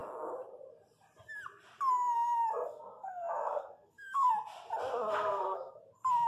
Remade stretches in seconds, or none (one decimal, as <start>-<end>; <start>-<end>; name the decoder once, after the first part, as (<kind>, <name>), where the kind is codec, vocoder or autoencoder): 2.5-4.3 (codec, SNAC); 5.1-5.8